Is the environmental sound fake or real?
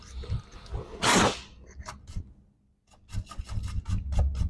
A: real